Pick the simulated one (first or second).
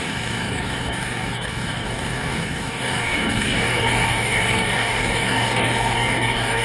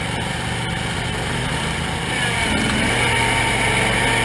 first